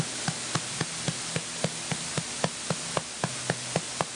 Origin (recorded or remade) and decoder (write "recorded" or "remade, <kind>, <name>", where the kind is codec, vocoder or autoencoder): recorded